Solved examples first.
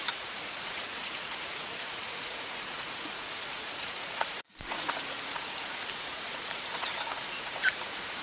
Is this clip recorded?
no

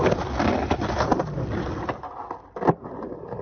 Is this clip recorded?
yes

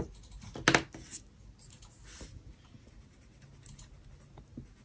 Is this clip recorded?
yes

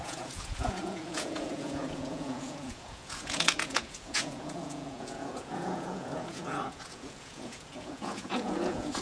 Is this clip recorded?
no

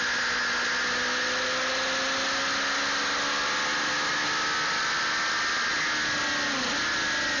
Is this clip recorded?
yes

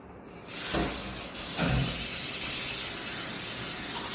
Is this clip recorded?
yes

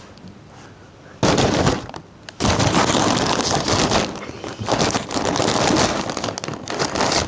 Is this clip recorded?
yes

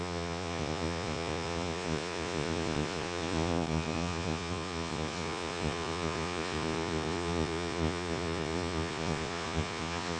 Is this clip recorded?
no